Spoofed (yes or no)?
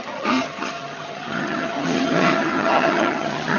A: yes